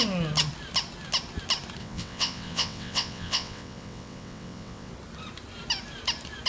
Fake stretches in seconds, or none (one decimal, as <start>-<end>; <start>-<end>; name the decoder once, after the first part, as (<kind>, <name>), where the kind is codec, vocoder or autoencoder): 1.8-4.9 (vocoder, WaveNeXt)